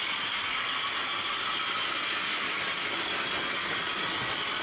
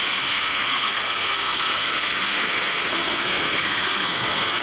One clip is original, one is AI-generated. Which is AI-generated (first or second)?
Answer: second